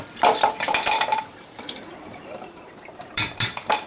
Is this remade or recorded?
remade